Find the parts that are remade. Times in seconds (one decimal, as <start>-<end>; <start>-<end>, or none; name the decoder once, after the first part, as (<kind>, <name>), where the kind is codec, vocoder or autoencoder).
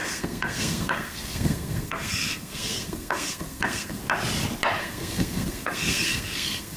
0.0-4.0 (codec, SNAC); 4.8-6.8